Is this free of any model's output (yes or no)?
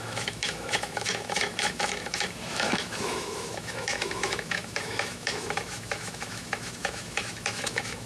no